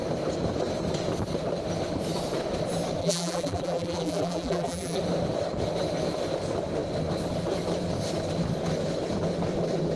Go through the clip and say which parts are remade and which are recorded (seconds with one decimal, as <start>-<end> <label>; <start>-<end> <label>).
0.0-3.0 recorded; 3.0-5.0 remade; 5.0-10.0 recorded